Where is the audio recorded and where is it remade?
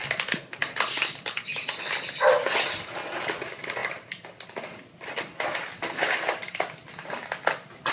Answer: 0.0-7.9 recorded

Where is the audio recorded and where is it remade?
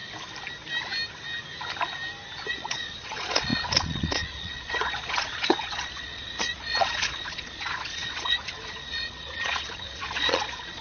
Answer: 0.0-2.5 recorded; 2.5-10.8 remade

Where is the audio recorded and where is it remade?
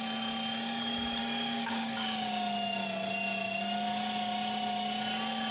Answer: 0.0-1.2 recorded; 1.2-2.3 remade; 2.3-5.5 recorded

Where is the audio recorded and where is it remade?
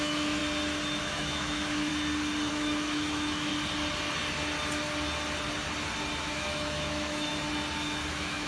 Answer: 0.0-0.4 remade; 0.4-1.0 recorded; 1.0-1.9 remade; 1.9-2.5 recorded; 2.5-3.5 remade; 3.5-6.2 recorded; 6.2-7.3 remade; 7.3-8.1 recorded; 8.1-8.5 remade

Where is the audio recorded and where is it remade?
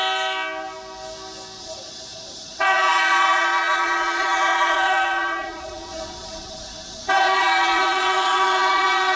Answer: 0.0-1.6 recorded; 1.6-9.2 remade